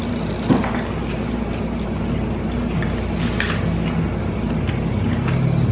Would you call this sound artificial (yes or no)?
no